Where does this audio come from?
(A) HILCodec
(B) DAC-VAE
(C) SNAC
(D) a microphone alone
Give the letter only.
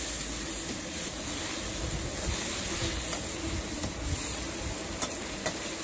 D